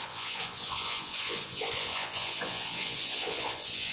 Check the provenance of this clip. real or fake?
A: fake